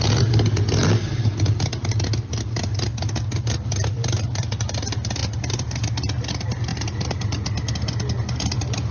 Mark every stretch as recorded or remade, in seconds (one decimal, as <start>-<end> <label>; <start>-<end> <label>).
0.0-5.2 recorded; 5.2-5.8 remade; 5.8-8.9 recorded

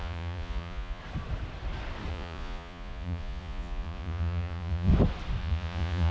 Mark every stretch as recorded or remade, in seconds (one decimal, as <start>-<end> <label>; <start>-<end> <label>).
0.0-1.0 remade; 1.0-2.1 recorded; 2.1-4.9 remade; 4.9-5.4 recorded; 5.4-6.1 remade

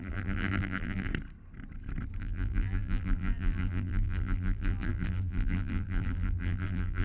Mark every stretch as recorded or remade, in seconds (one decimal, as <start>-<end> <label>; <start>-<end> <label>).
0.0-1.1 remade; 1.1-2.2 recorded; 2.2-7.0 remade

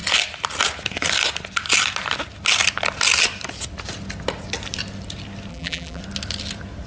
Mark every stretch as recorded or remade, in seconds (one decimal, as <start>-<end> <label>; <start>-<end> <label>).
0.0-5.5 recorded; 5.5-6.0 remade; 6.0-6.9 recorded

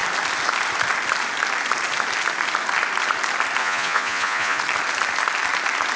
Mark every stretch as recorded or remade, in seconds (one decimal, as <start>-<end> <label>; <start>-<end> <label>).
0.0-3.6 recorded; 3.6-4.6 remade; 4.6-6.0 recorded

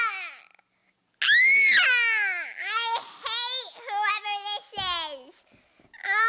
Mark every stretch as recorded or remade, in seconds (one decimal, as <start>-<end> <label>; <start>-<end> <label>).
0.0-6.3 recorded

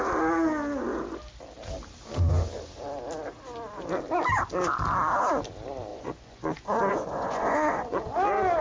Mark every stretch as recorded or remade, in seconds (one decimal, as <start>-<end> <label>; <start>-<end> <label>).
0.0-5.9 recorded; 5.9-8.1 remade; 8.1-8.6 recorded